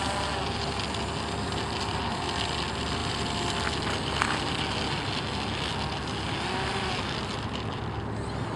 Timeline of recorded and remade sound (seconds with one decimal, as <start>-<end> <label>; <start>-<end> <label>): 0.0-8.6 recorded